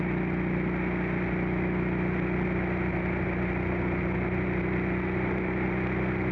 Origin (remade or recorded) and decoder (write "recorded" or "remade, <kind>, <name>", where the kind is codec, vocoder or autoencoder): recorded